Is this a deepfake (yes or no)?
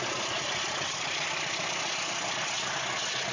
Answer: no